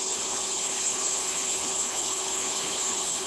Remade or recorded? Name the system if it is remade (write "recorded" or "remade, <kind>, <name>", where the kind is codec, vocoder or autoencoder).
remade, codec, HILCodec